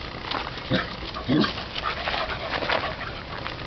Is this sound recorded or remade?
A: recorded